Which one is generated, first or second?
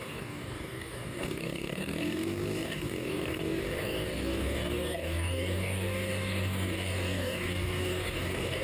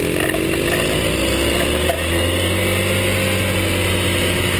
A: first